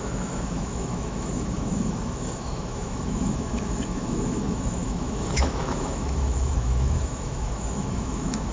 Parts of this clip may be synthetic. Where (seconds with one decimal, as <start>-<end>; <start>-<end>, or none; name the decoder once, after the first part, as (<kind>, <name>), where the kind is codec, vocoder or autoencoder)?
0.0-8.5 (autoencoder, DAC-VAE)